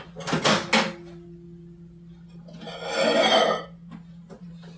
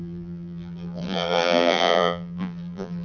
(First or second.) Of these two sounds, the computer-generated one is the second